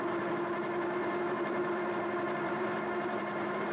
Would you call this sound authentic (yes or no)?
no